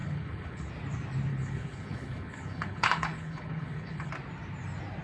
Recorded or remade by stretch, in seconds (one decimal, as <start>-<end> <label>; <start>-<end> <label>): 0.0-0.7 remade; 0.7-1.3 recorded; 1.3-4.1 remade; 4.1-5.0 recorded